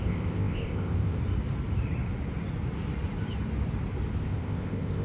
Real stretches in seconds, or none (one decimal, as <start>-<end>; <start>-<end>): 1.2-4.2